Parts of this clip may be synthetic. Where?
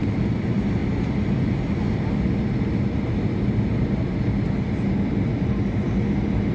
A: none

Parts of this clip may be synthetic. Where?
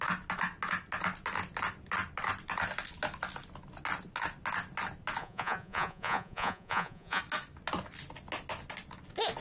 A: 5.2-7.2